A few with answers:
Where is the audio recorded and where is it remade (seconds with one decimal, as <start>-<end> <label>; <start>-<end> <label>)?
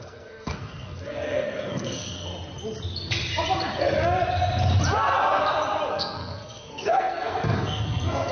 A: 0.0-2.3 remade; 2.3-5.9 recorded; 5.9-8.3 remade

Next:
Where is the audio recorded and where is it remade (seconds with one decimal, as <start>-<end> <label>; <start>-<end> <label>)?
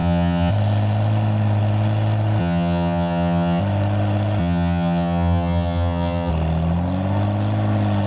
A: 0.0-0.5 remade; 0.5-2.4 recorded; 2.4-3.6 remade; 3.6-4.4 recorded; 4.4-6.3 remade; 6.3-8.1 recorded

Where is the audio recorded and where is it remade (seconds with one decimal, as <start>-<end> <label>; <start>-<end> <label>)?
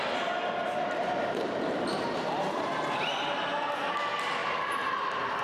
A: 0.0-0.6 recorded; 0.6-3.1 remade; 3.1-4.4 recorded; 4.4-5.4 remade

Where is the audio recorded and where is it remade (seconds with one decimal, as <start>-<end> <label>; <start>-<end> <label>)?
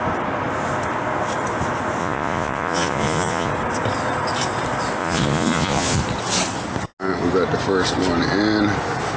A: 0.0-2.0 recorded; 2.0-3.5 remade; 3.5-5.0 recorded; 5.0-6.0 remade; 6.0-9.2 recorded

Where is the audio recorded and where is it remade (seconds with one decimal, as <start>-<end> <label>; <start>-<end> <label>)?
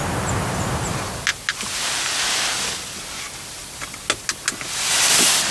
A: 0.0-5.5 recorded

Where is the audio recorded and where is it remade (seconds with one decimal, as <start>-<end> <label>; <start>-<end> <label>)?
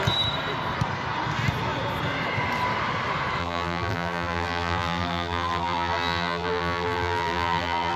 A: 0.0-3.4 recorded; 3.4-8.0 remade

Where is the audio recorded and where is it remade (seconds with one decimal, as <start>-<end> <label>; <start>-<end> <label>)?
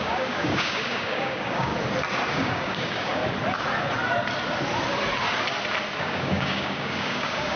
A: 0.0-1.7 remade; 1.7-2.3 recorded; 2.3-3.2 remade; 3.2-6.0 recorded; 6.0-7.6 remade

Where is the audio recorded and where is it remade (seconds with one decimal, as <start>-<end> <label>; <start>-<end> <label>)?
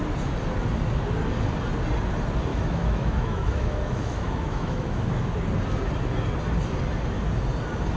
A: 0.0-2.5 recorded; 2.5-5.1 remade; 5.1-8.0 recorded